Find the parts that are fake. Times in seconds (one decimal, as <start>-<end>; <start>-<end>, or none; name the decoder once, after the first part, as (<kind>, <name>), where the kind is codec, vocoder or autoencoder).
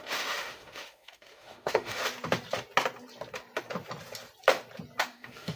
0.0-2.0 (autoencoder, DAC-VAE); 5.0-5.6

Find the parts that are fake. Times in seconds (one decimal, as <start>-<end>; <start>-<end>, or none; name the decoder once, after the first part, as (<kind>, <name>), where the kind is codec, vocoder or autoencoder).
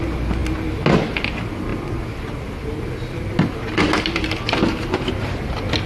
none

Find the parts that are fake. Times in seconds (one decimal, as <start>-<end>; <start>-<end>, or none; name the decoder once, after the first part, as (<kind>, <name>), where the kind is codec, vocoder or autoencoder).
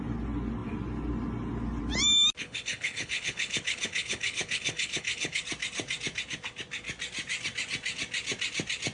2.4-5.4 (codec, HILCodec)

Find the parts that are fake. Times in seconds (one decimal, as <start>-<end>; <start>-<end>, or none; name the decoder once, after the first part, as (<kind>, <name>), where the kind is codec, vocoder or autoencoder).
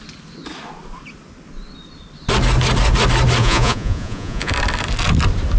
3.4-4.5 (vocoder, Vocos)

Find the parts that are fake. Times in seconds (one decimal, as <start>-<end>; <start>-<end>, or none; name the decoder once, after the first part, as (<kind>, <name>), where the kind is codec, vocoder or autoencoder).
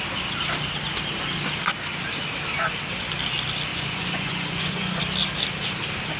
3.7-5.0 (vocoder, Vocos)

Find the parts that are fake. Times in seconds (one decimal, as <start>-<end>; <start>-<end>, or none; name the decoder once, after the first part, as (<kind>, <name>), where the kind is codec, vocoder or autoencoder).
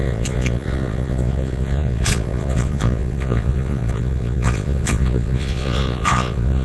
0.0-6.6 (vocoder, Vocos)